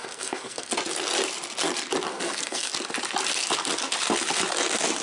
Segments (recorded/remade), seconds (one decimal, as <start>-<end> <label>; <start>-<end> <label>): 0.0-0.7 remade; 0.7-2.1 recorded; 2.1-2.7 remade; 2.7-5.0 recorded